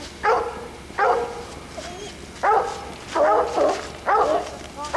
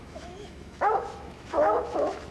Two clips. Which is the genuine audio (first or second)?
first